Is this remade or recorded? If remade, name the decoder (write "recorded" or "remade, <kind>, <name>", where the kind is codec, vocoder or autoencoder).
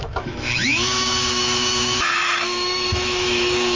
remade, autoencoder, DAC-VAE